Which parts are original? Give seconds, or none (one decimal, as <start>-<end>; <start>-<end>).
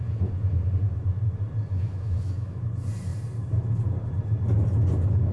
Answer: 0.0-1.7; 2.6-5.3